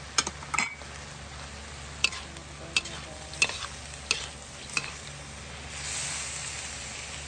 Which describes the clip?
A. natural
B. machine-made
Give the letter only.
A